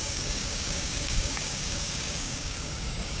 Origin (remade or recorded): remade